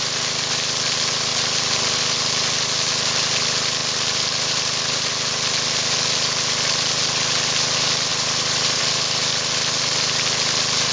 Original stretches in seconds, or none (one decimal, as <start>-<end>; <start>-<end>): 0.0-3.8; 4.9-8.1; 8.8-10.9